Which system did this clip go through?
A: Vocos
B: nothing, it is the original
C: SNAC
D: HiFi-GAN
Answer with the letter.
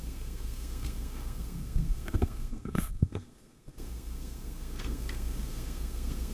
C